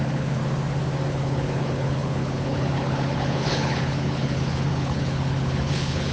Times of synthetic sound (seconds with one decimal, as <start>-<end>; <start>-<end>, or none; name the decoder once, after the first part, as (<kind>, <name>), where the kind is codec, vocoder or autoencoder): 0.0-0.4 (codec, HILCodec); 1.1-6.1